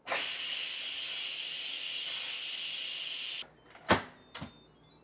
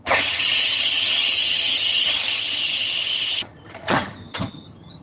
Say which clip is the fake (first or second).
second